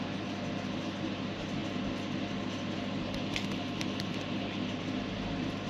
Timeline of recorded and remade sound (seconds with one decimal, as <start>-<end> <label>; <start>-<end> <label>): 0.0-5.7 recorded